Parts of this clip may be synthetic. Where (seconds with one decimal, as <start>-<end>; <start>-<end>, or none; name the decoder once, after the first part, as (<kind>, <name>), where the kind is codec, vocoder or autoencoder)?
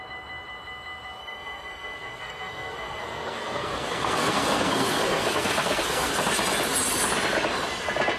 1.2-6.1 (codec, SNAC)